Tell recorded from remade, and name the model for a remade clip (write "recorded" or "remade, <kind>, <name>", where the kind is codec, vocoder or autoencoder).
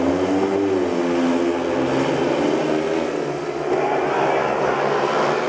recorded